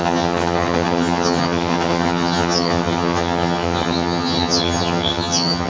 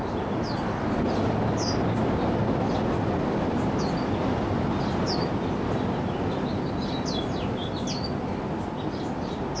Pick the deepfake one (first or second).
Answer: first